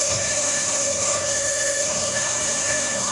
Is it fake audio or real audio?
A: fake